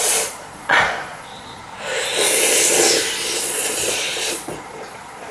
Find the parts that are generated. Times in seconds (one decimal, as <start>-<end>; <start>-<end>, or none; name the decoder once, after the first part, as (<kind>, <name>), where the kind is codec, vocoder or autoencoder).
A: 0.0-1.6 (vocoder, Vocos); 3.4-5.3